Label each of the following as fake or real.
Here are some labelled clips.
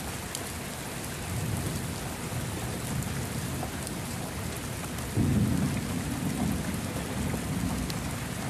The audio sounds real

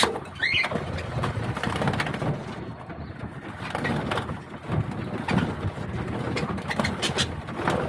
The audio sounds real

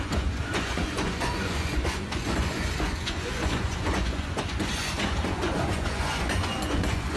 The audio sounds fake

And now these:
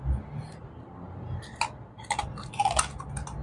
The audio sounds real